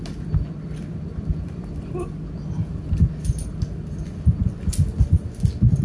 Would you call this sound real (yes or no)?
yes